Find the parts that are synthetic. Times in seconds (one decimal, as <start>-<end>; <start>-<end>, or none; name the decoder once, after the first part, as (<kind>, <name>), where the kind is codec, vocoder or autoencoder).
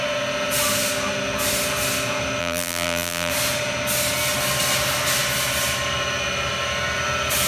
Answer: 2.4-3.3 (vocoder, BigVGAN v2)